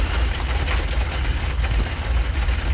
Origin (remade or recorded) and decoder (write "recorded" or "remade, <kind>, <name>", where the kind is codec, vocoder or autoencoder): recorded